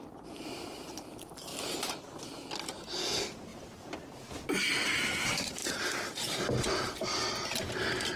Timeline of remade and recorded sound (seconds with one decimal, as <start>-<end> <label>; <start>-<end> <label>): 0.0-8.2 recorded